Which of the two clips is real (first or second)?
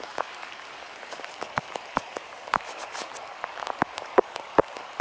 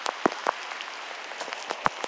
second